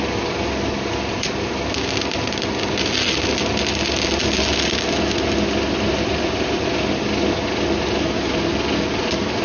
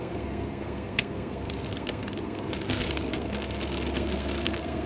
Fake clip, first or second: second